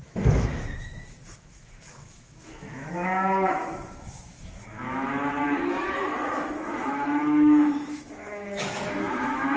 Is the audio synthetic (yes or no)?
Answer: yes